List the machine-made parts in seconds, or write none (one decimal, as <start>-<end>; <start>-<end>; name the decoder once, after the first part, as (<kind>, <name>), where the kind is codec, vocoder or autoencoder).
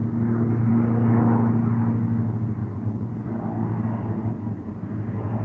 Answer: 2.6-3.3 (vocoder, Vocos)